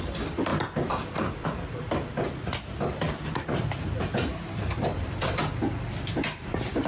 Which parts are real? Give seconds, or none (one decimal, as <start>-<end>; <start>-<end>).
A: 5.4-6.0